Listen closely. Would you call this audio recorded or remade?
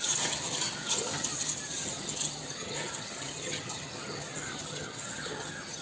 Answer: remade